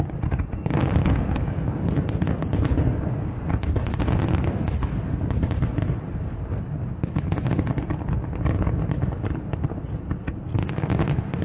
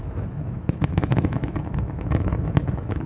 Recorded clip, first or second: first